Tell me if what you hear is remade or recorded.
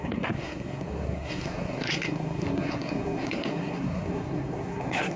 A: remade